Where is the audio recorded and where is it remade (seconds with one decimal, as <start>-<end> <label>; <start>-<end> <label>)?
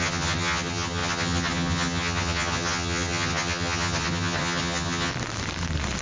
0.0-5.1 remade; 5.1-6.0 recorded